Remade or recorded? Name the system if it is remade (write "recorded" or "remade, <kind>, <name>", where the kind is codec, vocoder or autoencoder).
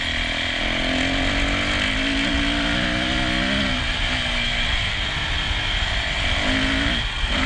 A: recorded